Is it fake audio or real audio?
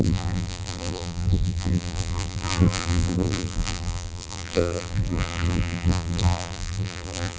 fake